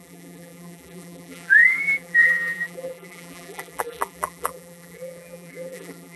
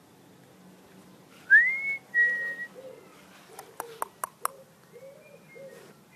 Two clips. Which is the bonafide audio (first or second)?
second